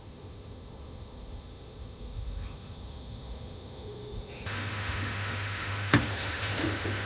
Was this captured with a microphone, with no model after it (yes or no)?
no